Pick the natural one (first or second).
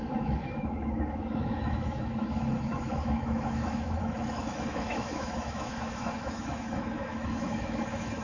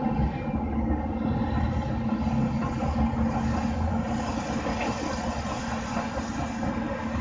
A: second